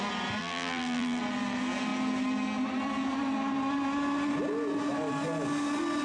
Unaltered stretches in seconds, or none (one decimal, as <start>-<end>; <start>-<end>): 0.0-0.4; 1.2-6.0